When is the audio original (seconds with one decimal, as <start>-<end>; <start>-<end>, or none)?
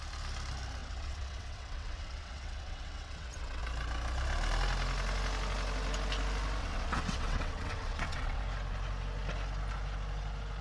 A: 0.0-0.8; 3.6-6.6; 8.4-10.6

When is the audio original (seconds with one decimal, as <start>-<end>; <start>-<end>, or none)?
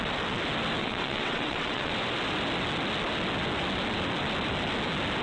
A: 0.0-0.8; 1.9-5.2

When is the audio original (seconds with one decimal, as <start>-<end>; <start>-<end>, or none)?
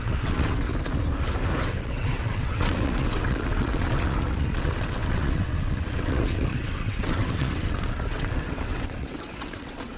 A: 0.7-1.8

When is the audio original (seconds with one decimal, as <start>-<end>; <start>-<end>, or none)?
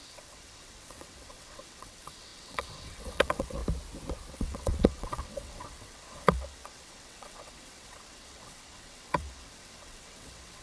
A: 3.6-4.3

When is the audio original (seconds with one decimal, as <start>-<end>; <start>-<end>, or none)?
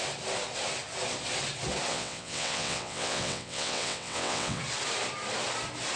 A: 0.0-1.9; 4.6-6.0